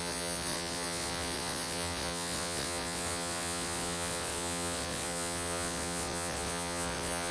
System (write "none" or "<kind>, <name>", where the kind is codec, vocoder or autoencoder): vocoder, WaveNeXt